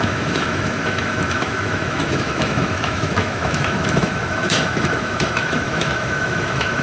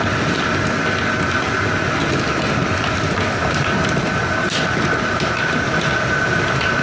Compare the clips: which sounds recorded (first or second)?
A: second